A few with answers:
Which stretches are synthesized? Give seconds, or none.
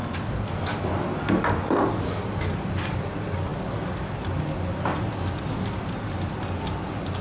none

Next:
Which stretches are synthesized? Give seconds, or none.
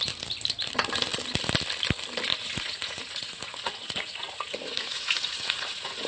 2.3-6.1 (vocoder, Vocos)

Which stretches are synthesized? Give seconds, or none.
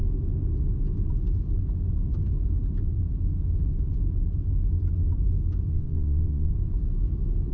5.7-6.5 (vocoder, Vocos)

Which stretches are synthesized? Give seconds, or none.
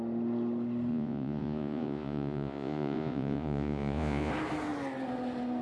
0.9-4.3 (vocoder, Vocos)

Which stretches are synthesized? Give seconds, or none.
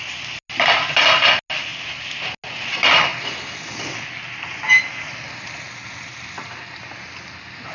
none